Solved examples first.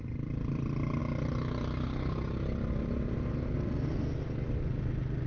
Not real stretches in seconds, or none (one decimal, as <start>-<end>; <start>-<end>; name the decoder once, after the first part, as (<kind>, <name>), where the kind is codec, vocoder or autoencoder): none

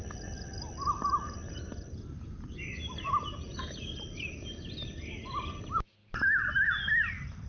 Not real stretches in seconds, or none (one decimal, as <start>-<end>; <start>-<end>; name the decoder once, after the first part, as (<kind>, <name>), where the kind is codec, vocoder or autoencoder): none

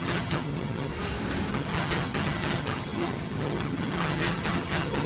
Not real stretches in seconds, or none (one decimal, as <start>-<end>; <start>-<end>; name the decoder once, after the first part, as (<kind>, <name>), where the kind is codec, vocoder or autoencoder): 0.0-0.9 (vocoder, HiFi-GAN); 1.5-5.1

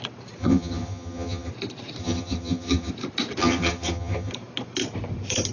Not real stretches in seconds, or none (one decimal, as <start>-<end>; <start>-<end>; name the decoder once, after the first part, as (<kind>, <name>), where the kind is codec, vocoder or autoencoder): 0.4-1.5 (vocoder, HiFi-GAN); 2.0-2.9; 3.4-4.3

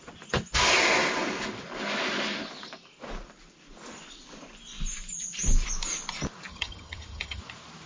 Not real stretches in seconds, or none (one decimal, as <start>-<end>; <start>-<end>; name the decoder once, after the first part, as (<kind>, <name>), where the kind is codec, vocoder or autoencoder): 6.5-7.4 (vocoder, HiFi-GAN)